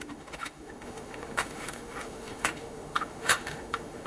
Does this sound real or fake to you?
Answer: fake